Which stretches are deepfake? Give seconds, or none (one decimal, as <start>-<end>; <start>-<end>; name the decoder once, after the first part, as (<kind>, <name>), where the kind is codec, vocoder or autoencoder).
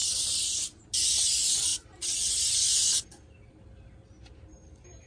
0.0-0.8 (vocoder, BigVGAN v2); 1.7-2.2